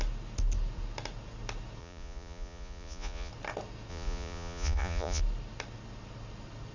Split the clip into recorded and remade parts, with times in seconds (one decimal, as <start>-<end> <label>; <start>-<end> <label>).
0.0-1.8 recorded; 1.8-3.3 remade; 3.3-3.9 recorded; 3.9-5.2 remade; 5.2-6.7 recorded